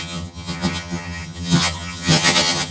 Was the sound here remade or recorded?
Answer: remade